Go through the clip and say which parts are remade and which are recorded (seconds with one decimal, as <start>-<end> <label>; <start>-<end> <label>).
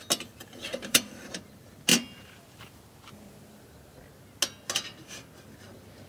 0.0-0.4 recorded; 0.4-1.3 remade; 1.3-6.1 recorded